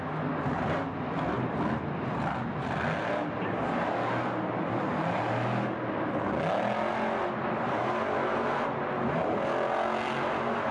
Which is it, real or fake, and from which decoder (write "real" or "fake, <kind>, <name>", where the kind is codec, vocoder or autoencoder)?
real